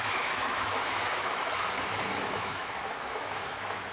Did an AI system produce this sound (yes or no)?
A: yes